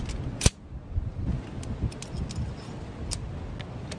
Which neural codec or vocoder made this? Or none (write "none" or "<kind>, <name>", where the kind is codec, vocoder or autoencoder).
none